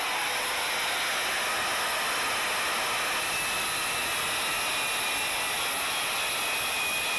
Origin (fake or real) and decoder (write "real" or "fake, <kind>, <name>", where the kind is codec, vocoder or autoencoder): real